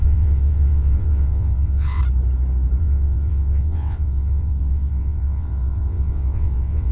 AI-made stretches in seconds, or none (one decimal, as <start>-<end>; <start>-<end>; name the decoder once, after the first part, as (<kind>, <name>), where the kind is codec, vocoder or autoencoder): 0.0-2.0 (vocoder, WaveNeXt); 2.8-6.9

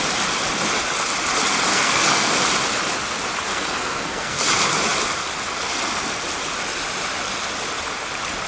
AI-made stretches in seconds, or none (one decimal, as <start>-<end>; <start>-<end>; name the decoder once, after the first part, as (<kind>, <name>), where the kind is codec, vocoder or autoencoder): 1.7-2.3 (codec, SNAC); 3.5-4.4

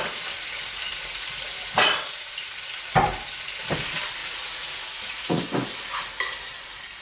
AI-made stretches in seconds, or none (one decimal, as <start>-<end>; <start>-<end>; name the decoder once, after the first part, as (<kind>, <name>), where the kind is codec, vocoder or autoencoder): 4.2-5.4 (vocoder, Vocos)

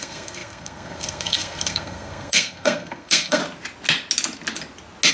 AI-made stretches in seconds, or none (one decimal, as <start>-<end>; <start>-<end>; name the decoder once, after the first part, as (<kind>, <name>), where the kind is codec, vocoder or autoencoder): 0.0-3.4 (codec, SNAC)

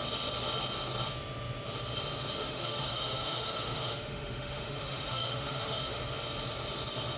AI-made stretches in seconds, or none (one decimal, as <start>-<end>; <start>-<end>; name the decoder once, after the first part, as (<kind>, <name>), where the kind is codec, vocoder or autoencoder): 2.4-6.0 (autoencoder, DAC-VAE)

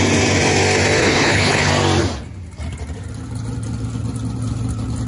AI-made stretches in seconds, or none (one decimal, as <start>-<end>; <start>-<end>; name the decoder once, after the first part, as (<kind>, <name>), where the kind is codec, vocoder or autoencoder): 1.0-1.7 (codec, HILCodec)

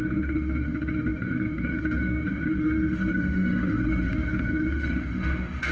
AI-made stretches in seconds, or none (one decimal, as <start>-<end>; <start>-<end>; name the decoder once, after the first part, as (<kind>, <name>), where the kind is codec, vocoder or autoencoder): 0.0-5.7 (autoencoder, DAC-VAE)

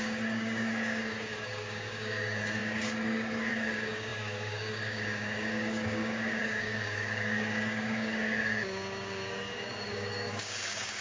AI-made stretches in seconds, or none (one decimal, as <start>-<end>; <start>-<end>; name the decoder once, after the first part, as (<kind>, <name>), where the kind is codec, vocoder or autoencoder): 0.0-11.0 (codec, DAC)